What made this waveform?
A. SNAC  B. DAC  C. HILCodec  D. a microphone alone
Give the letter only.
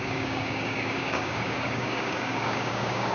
B